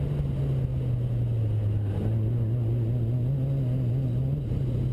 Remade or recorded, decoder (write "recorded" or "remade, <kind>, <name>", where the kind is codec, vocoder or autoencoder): recorded